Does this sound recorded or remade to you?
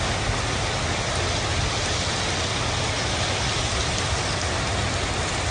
recorded